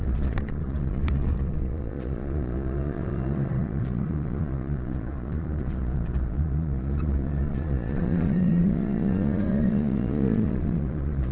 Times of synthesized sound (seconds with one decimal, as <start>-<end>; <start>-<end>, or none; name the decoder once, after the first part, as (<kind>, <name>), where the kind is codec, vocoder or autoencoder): 0.0-11.3 (vocoder, Vocos)